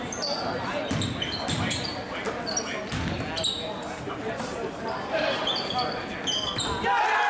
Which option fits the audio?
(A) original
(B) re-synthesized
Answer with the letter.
A